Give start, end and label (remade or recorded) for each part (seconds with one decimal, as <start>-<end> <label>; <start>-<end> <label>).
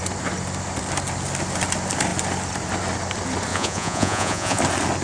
0.0-3.5 recorded; 3.5-4.6 remade; 4.6-5.0 recorded